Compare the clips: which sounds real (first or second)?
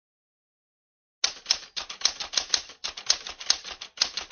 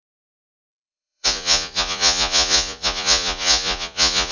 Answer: first